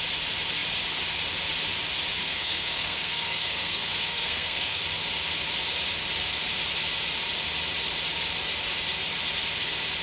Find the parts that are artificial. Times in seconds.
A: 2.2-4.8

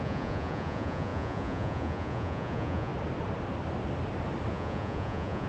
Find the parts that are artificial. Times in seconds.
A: 0.0-2.9; 4.5-5.5

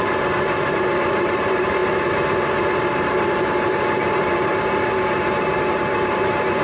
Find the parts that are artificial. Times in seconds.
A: 0.0-1.8; 2.8-6.6

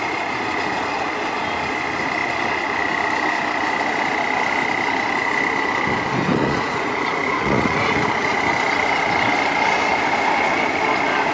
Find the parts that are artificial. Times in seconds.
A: 6.3-8.4